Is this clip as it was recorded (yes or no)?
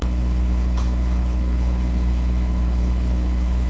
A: no